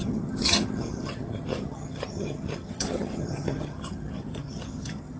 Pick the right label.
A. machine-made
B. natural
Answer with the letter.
A